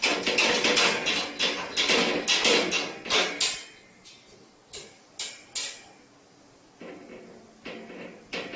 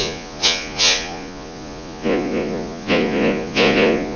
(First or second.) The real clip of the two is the first